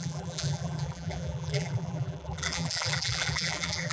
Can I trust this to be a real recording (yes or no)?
no